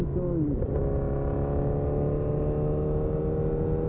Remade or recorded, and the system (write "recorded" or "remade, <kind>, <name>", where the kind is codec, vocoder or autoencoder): recorded